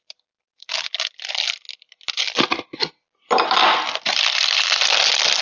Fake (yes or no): no